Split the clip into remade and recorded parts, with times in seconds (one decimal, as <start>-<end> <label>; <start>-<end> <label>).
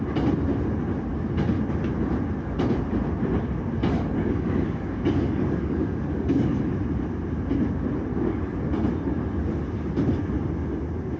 0.0-3.8 recorded; 3.8-6.6 remade; 6.6-8.1 recorded; 8.1-8.6 remade; 8.6-11.2 recorded